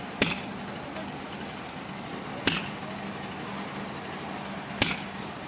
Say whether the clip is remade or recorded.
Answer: recorded